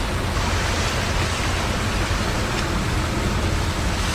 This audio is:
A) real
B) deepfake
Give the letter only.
A